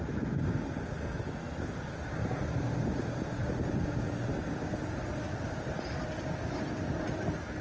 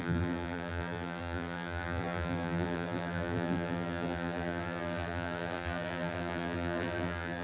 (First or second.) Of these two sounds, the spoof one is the second